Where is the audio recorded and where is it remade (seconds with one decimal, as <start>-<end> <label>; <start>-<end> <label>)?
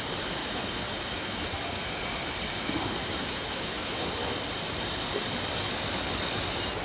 0.0-0.4 recorded; 0.4-2.0 remade; 2.0-3.2 recorded; 3.2-4.1 remade; 4.1-6.8 recorded